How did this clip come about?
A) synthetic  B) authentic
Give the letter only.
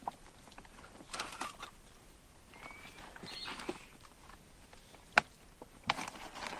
A